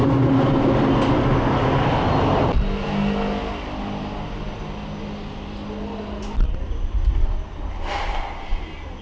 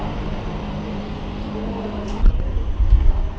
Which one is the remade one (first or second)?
second